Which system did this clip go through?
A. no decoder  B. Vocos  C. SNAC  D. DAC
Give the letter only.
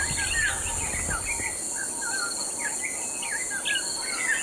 A